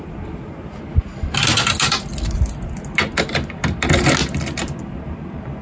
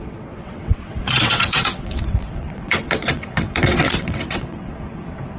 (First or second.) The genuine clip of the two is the first